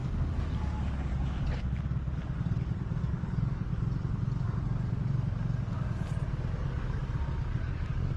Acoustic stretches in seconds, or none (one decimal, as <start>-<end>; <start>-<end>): 1.1-3.0; 3.7-6.5; 7.0-7.6

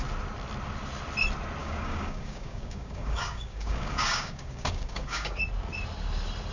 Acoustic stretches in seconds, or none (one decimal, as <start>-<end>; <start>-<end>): 0.0-1.6; 5.4-6.5